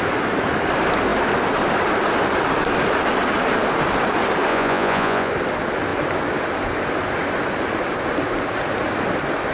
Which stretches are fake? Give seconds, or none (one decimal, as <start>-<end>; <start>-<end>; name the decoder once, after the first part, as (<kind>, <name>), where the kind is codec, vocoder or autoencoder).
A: 4.5-5.3 (vocoder, Vocos)